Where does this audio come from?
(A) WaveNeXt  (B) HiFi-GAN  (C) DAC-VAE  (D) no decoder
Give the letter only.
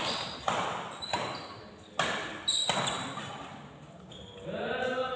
D